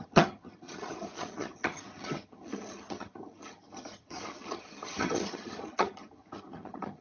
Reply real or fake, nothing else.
fake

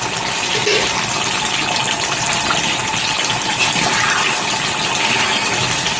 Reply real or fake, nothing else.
real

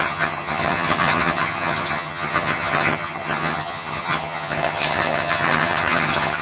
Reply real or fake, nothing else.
fake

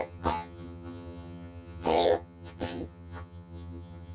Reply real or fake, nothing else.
fake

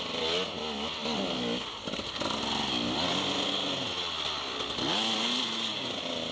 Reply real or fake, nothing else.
real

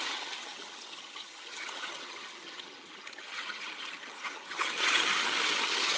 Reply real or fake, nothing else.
fake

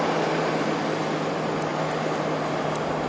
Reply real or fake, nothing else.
real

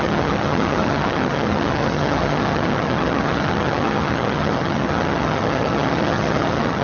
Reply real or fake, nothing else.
fake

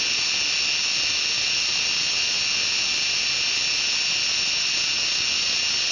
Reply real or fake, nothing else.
real